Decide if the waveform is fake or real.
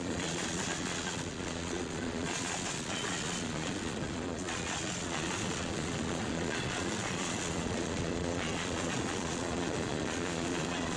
fake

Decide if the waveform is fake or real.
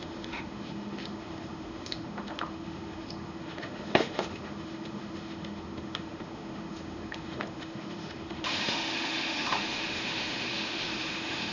fake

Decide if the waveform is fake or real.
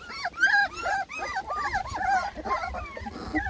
real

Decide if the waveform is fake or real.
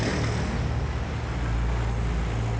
real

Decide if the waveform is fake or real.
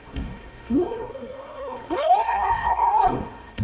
fake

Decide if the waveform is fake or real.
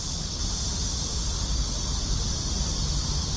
real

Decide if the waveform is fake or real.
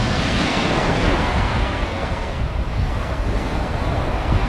fake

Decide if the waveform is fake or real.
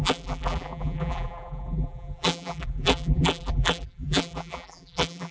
fake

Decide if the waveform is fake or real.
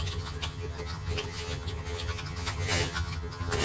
fake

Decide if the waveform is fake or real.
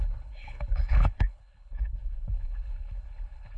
fake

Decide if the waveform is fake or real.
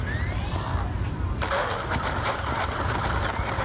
real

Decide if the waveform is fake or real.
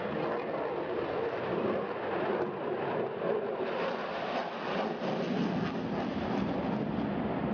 real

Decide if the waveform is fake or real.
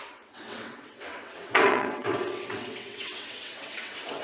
fake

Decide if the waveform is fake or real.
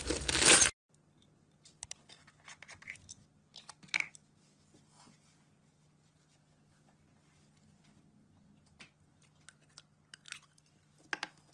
real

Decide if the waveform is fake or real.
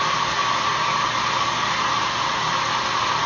real